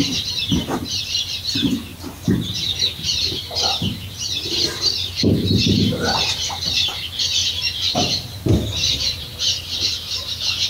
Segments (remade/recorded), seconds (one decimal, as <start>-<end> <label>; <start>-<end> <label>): 0.0-10.7 recorded